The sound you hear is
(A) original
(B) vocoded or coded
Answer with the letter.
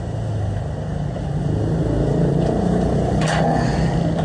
A